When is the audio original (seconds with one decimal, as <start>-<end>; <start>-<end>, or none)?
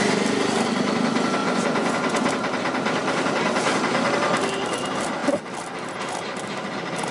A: 0.0-1.4; 2.3-7.1